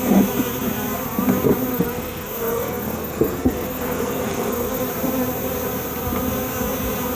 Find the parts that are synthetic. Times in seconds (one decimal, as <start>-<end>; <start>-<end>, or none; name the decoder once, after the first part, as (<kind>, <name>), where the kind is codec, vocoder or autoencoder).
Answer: 1.7-4.8 (codec, SNAC)